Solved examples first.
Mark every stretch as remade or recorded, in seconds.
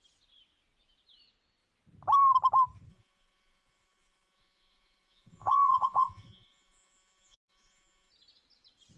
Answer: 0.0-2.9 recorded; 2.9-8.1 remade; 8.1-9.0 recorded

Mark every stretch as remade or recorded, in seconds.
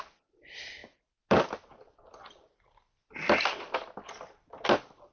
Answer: 0.0-5.1 recorded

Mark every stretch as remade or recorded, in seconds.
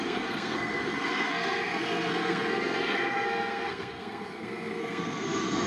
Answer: 0.0-5.7 remade